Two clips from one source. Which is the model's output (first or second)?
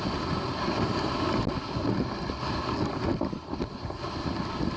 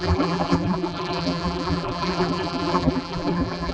second